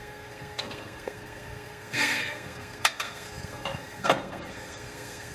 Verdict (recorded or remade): remade